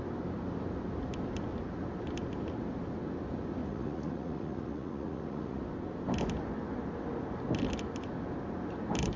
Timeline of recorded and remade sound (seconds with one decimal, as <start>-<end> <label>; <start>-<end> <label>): 0.0-3.6 recorded; 3.6-5.6 remade; 5.6-9.2 recorded